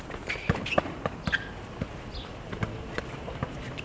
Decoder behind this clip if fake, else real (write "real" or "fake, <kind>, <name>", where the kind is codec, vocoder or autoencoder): real